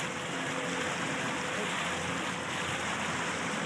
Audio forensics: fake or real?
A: real